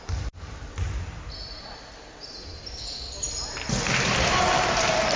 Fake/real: real